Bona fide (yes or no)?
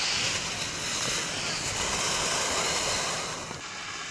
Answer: yes